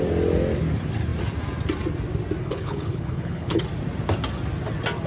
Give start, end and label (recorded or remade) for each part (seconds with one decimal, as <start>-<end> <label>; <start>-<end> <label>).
0.0-2.4 recorded; 2.4-3.6 remade; 3.6-5.1 recorded